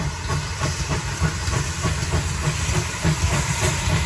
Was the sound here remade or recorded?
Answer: recorded